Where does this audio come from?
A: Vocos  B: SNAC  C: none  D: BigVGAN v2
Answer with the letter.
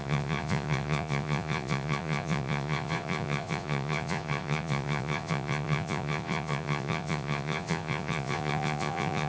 A